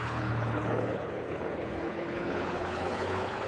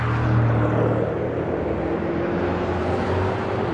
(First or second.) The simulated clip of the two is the first